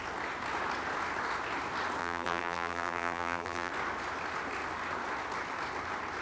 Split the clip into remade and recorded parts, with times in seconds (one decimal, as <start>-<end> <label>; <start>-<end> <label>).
0.0-2.0 recorded; 2.0-3.7 remade; 3.7-6.2 recorded

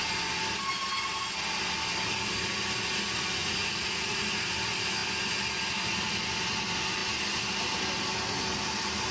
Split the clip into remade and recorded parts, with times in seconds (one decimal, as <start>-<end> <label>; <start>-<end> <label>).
0.0-3.4 recorded; 3.4-4.2 remade; 4.2-9.1 recorded

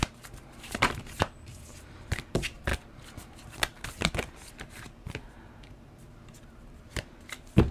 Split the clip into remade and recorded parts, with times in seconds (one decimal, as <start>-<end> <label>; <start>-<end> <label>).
0.0-2.7 remade; 2.7-4.5 recorded; 4.5-7.7 remade

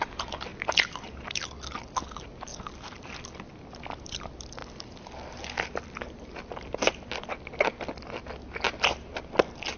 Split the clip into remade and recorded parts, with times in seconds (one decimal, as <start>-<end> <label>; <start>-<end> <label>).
0.0-0.5 recorded; 0.5-1.5 remade; 1.5-2.5 recorded; 2.5-3.1 remade; 3.1-9.8 recorded

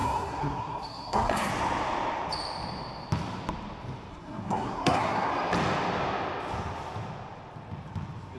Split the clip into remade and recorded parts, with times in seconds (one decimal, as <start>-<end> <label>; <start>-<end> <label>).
0.0-1.5 remade; 1.5-4.1 recorded; 4.1-5.3 remade; 5.3-8.4 recorded

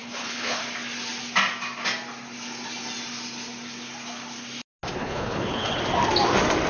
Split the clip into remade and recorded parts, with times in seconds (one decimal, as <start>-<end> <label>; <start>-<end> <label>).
0.0-0.6 remade; 0.6-5.0 recorded; 5.0-5.8 remade; 5.8-6.7 recorded

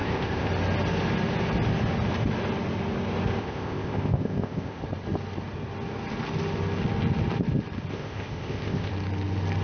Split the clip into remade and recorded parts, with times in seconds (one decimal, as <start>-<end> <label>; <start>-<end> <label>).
0.0-0.5 remade; 0.5-3.4 recorded; 3.4-4.8 remade; 4.8-7.9 recorded; 7.9-8.9 remade; 8.9-9.6 recorded

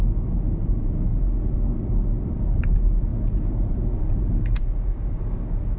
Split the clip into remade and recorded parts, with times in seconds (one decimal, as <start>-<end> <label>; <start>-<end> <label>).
0.0-5.8 recorded